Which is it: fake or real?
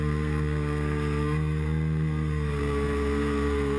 fake